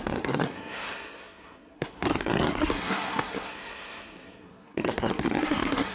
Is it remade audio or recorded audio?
remade